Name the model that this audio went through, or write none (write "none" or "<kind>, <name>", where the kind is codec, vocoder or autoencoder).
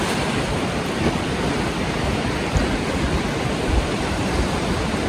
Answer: vocoder, BigVGAN v2